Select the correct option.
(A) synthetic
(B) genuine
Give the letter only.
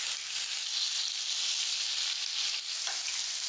B